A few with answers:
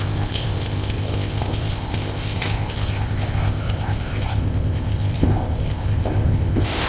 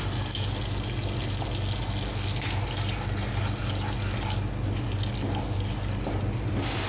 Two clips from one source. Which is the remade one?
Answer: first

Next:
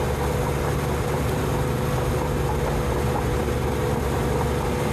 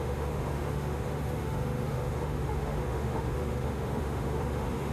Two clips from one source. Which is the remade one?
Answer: second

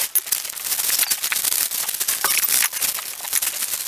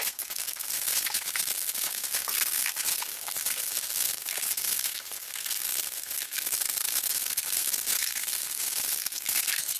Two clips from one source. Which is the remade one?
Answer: second